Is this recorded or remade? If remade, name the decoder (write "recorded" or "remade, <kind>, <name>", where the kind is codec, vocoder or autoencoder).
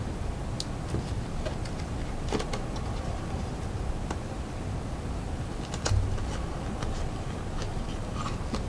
recorded